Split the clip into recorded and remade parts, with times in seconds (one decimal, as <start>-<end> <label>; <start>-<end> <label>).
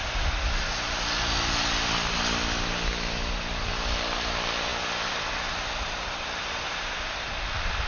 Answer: 0.0-7.9 recorded